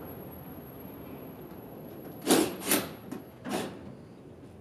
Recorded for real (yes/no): yes